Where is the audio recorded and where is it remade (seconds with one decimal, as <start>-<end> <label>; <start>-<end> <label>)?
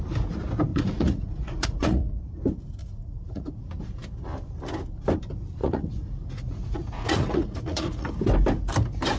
0.0-0.7 recorded; 0.7-2.2 remade; 2.2-2.8 recorded; 2.8-3.5 remade; 3.5-5.6 recorded; 5.6-8.1 remade; 8.1-9.2 recorded